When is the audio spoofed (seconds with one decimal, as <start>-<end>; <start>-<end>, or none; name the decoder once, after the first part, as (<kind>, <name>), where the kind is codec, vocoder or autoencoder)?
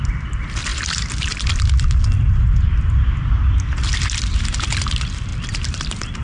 0.0-0.7 (vocoder, BigVGAN v2); 4.1-6.2